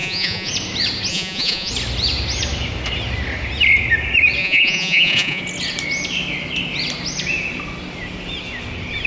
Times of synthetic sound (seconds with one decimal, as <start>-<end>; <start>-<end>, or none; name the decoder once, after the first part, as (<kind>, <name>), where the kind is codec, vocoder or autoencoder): 0.0-0.5 (vocoder, Vocos); 1.1-1.7; 4.4-5.4